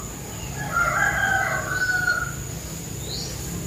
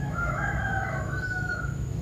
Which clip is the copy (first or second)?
second